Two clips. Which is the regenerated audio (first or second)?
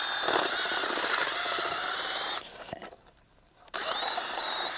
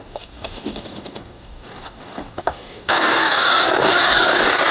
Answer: second